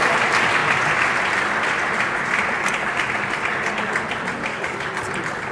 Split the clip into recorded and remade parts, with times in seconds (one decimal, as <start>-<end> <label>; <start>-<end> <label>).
0.0-4.5 recorded; 4.5-5.1 remade; 5.1-5.5 recorded